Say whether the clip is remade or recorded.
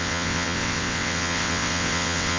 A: remade